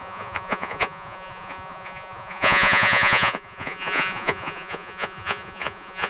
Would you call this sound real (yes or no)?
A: no